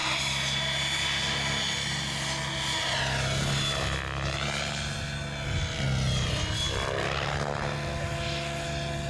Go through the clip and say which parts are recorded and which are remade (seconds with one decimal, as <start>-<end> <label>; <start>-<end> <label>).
0.0-9.1 recorded